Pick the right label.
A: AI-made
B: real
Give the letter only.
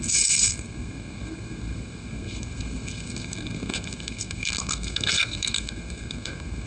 A